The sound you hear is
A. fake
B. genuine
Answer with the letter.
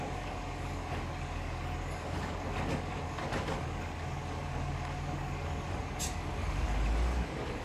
A